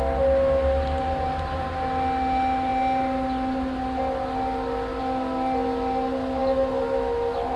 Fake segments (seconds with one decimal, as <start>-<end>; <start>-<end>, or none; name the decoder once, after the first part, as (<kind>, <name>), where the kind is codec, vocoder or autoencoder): none